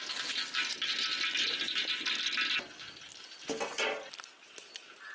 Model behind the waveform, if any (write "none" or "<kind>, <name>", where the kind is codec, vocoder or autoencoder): none